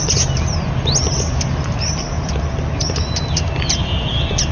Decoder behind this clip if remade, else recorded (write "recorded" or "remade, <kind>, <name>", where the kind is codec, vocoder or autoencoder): recorded